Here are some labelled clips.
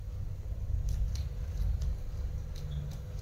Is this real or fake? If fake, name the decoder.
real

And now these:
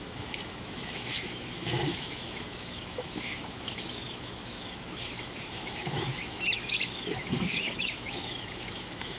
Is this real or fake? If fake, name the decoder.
fake, autoencoder, DAC-VAE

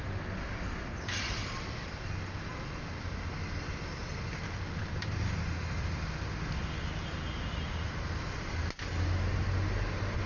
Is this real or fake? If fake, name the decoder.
real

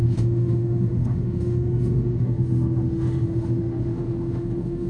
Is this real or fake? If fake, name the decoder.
fake, autoencoder, DAC-VAE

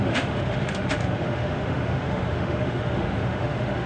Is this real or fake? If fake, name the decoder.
fake, autoencoder, DAC-VAE